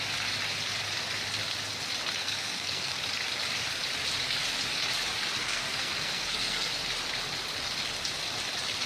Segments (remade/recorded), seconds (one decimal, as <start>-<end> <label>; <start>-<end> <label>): 0.0-2.2 recorded; 2.2-3.0 remade; 3.0-5.4 recorded; 5.4-6.7 remade; 6.7-8.9 recorded